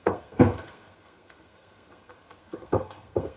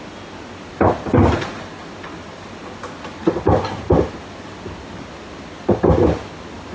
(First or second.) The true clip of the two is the second